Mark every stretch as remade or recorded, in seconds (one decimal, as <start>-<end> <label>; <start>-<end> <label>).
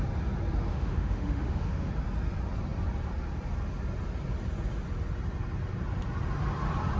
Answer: 0.0-0.7 recorded; 0.7-1.9 remade; 1.9-7.0 recorded